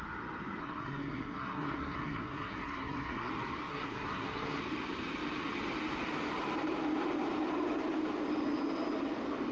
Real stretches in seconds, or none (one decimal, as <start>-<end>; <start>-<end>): 0.0-0.6; 3.3-3.7; 4.6-9.5